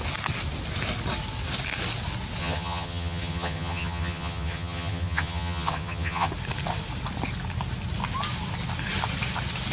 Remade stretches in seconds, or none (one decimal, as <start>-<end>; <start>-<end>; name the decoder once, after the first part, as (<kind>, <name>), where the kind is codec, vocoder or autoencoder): 2.4-6.3 (vocoder, HiFi-GAN)